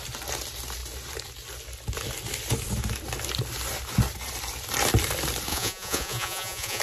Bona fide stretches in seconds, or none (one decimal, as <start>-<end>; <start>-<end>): 0.0-5.5